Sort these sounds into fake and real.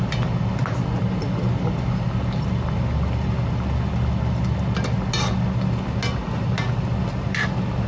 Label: real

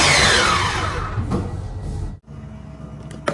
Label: real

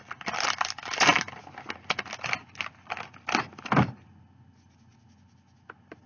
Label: real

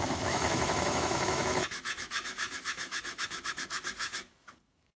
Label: fake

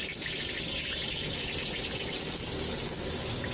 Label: real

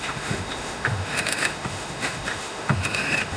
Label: fake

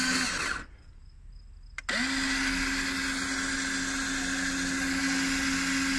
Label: real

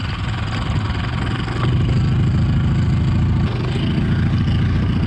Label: real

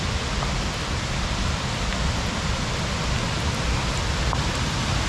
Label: real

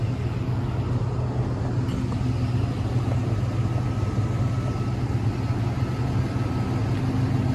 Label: real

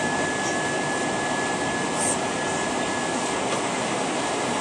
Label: real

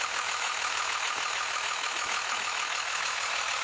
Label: fake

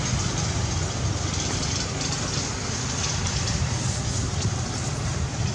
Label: real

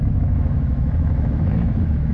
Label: fake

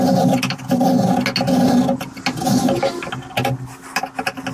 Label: real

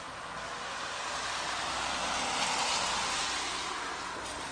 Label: real